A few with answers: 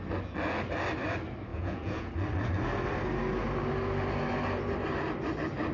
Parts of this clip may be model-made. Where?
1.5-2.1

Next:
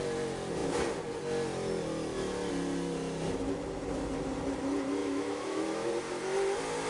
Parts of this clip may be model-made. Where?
5.0-5.9

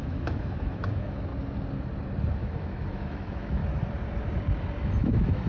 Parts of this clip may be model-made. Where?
0.0-1.3; 2.4-3.6; 4.8-5.5

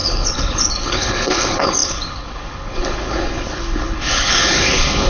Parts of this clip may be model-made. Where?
0.0-5.1

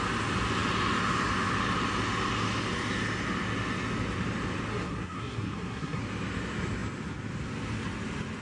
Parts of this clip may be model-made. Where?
4.7-6.0

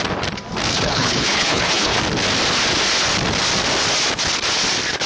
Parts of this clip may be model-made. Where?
0.7-2.0

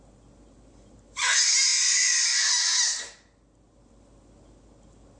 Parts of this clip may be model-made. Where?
none